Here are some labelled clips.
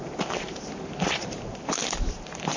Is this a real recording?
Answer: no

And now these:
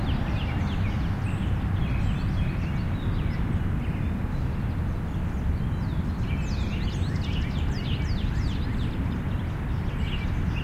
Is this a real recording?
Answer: yes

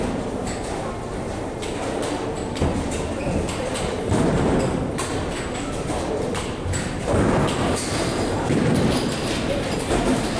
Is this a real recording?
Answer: yes